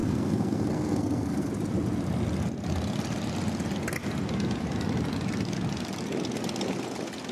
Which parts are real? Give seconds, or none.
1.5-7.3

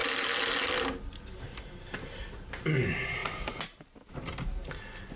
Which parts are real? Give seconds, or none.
0.0-5.2

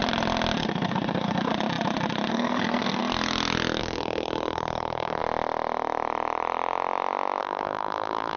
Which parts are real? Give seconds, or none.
0.0-0.6; 1.5-2.3; 3.0-3.8; 5.2-7.4

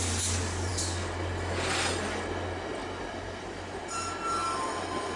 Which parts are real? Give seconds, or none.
0.0-5.2